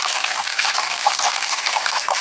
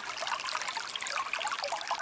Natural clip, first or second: second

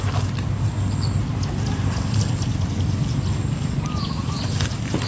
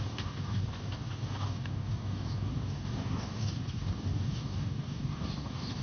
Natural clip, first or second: first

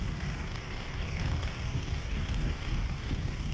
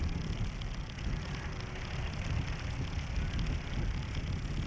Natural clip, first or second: second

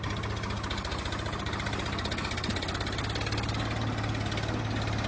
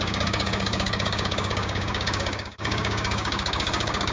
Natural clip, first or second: first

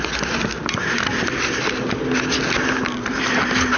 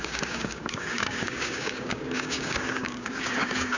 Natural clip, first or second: first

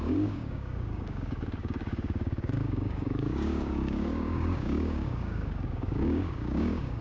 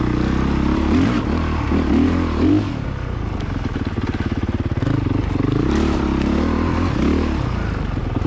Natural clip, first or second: second